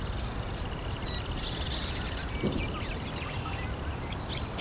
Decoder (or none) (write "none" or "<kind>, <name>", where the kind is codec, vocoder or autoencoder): none